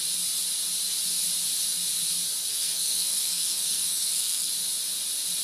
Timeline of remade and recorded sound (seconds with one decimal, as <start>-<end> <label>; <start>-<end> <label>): 0.0-2.5 recorded; 2.5-4.5 remade; 4.5-5.4 recorded